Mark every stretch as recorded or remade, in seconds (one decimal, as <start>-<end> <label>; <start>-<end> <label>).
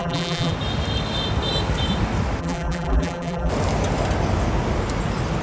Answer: 0.0-0.5 remade; 0.5-2.4 recorded; 2.4-3.5 remade; 3.5-5.4 recorded